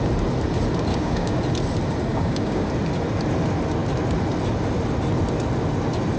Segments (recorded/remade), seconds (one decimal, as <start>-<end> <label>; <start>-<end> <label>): 0.0-0.9 recorded; 0.9-1.4 remade; 1.4-2.1 recorded; 2.1-2.7 remade; 2.7-6.2 recorded